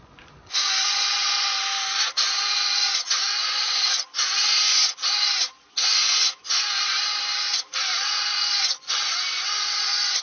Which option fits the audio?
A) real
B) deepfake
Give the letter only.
B